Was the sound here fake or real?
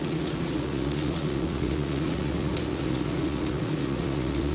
fake